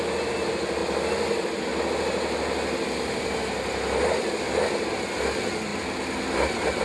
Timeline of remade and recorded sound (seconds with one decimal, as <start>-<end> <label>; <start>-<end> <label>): 0.0-6.8 recorded